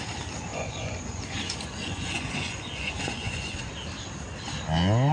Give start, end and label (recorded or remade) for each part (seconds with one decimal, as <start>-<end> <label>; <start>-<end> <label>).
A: 0.0-0.5 recorded; 0.5-3.6 remade; 3.6-5.1 recorded